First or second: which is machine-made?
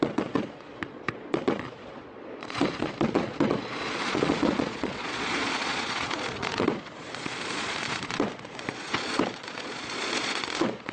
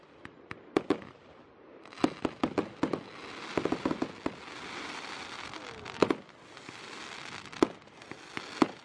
first